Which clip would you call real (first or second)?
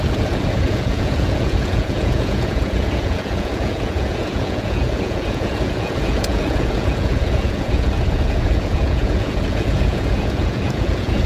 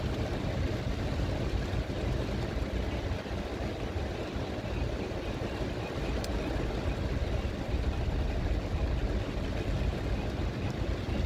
second